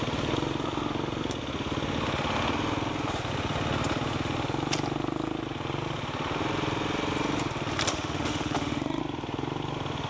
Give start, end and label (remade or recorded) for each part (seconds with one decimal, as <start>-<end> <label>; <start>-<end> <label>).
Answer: 0.0-7.9 recorded; 7.9-9.0 remade; 9.0-10.1 recorded